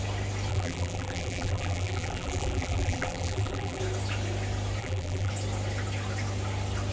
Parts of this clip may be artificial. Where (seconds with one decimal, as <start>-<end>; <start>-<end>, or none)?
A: 0.5-3.8; 4.8-5.3